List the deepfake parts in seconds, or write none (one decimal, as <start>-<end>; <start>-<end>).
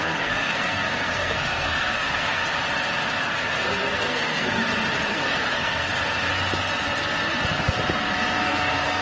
0.0-2.4; 3.2-4.6; 5.1-5.9; 8.4-9.0